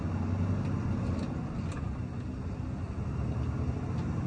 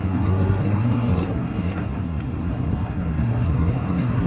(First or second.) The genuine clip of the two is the first